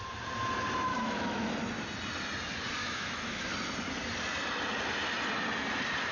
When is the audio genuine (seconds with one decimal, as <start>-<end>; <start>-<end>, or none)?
0.0-0.9; 1.5-2.8; 3.5-6.1